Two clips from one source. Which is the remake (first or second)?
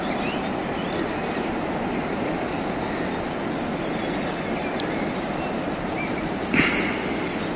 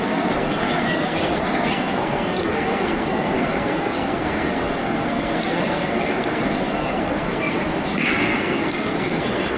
second